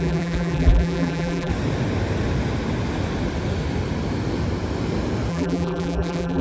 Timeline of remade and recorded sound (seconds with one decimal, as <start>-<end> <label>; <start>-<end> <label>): 0.0-1.5 remade; 1.5-5.3 recorded; 5.3-6.4 remade